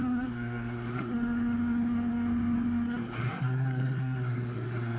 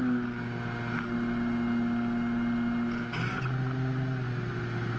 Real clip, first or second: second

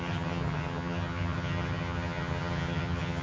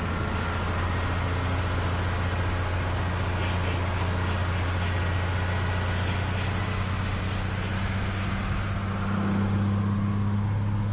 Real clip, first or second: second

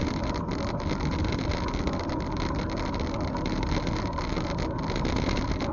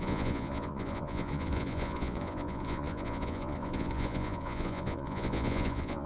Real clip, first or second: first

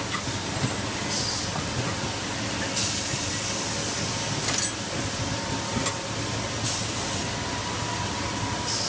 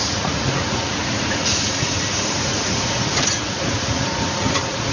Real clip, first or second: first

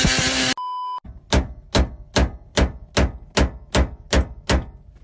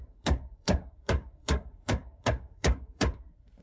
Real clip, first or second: first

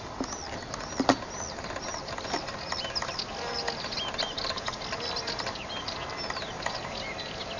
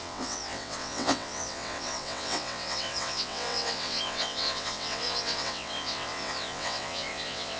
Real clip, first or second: first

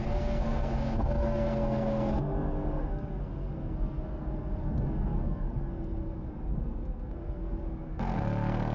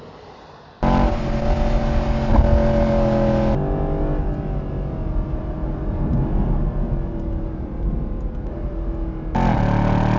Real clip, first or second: second